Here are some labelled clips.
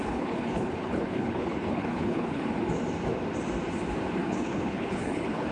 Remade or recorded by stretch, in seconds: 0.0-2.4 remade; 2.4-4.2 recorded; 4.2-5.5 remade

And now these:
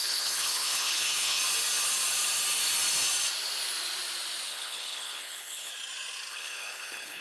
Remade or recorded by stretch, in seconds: 0.0-1.4 remade; 1.4-4.5 recorded; 4.5-5.7 remade; 5.7-6.3 recorded; 6.3-7.2 remade

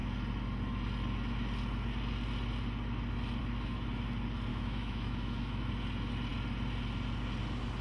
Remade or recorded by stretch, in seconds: 0.0-4.5 recorded; 4.5-5.7 remade; 5.7-7.8 recorded

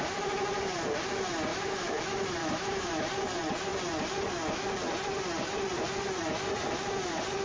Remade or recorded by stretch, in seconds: 0.0-1.5 recorded; 1.5-2.0 remade; 2.0-2.4 recorded; 2.4-3.0 remade; 3.0-7.4 recorded